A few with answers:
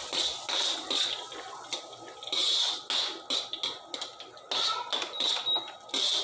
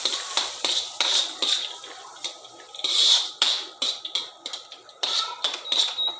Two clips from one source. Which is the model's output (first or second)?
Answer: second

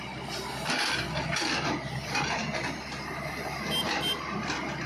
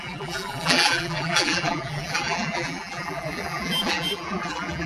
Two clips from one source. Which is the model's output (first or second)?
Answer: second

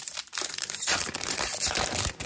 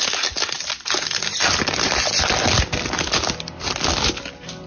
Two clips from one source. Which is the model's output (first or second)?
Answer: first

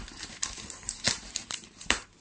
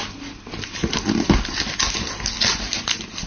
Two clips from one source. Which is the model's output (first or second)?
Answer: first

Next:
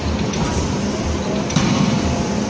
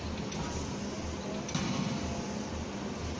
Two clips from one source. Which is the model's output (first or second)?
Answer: first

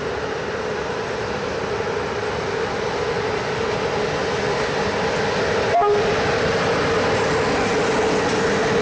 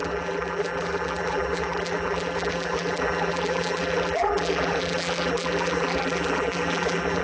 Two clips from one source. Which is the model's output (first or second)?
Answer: second